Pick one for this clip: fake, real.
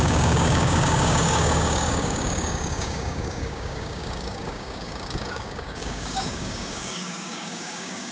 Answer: fake